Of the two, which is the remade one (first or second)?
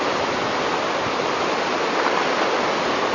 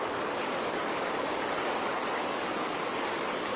second